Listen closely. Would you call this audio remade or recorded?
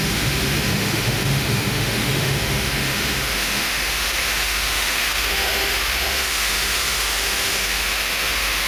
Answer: remade